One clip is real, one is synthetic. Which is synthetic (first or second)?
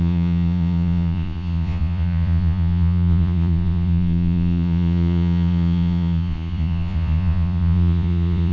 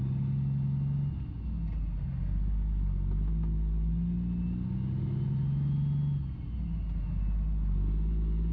first